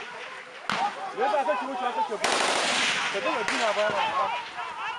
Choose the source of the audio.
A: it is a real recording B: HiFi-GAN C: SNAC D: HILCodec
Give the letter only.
A